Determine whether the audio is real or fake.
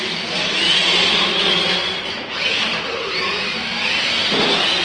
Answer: real